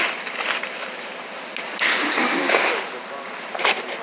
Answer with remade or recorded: recorded